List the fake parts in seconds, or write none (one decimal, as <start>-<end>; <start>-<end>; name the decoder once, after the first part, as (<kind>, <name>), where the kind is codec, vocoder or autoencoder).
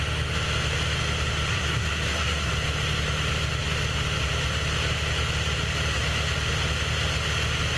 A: 1.5-2.5 (codec, SNAC)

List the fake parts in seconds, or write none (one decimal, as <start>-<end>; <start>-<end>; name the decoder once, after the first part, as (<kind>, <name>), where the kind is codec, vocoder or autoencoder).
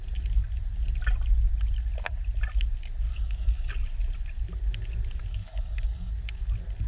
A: 3.1-3.7 (codec, DAC); 5.3-6.1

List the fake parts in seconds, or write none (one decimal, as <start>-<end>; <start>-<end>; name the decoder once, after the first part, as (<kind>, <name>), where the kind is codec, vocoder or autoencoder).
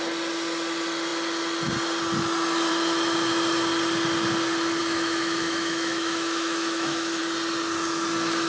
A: 4.8-7.2 (autoencoder, DAC-VAE)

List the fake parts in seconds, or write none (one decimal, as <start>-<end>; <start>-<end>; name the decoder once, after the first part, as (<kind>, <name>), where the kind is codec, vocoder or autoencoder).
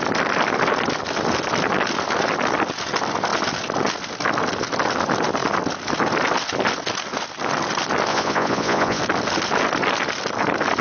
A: 8.1-9.0 (vocoder, Vocos)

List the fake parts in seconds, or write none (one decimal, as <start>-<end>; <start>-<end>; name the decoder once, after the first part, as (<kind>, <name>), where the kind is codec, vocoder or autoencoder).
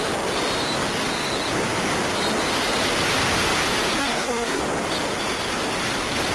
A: 4.0-4.6 (codec, SNAC)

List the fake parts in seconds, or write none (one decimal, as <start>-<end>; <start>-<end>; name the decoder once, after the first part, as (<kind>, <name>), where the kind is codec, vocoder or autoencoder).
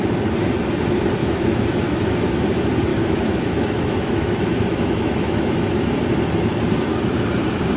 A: 1.2-2.5 (autoencoder, DAC-VAE); 2.9-6.0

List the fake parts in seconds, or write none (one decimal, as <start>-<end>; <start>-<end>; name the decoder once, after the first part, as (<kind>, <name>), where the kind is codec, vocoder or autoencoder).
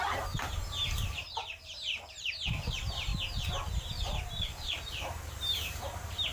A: 0.0-3.1 (vocoder, BigVGAN v2); 4.5-6.3